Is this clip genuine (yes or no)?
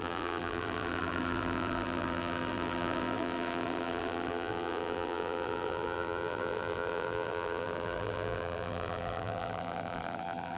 no